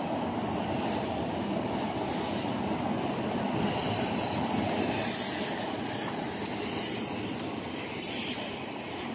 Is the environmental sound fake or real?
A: real